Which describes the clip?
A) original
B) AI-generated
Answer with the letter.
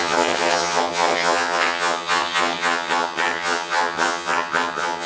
B